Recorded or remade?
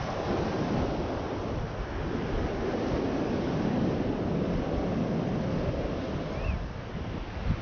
recorded